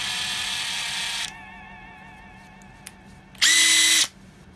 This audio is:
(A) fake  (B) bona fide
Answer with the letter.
B